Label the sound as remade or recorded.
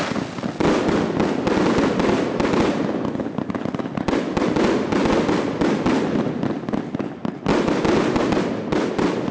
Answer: recorded